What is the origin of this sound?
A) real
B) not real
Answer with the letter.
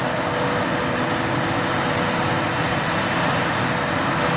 A